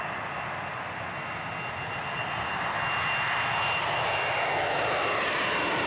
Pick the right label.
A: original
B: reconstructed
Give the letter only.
A